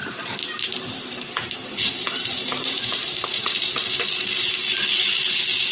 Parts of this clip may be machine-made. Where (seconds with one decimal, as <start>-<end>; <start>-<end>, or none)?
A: 0.0-3.4